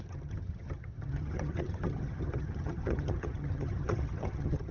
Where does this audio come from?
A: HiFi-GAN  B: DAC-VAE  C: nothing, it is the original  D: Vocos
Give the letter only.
A